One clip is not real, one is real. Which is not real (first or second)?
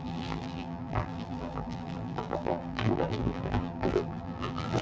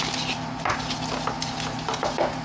first